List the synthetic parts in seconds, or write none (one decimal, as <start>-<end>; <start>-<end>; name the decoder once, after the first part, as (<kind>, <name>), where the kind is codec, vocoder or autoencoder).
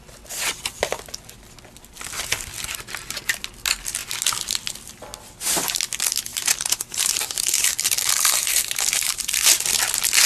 6.3-9.3 (vocoder, BigVGAN v2)